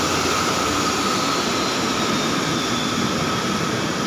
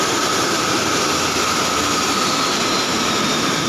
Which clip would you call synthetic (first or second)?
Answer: first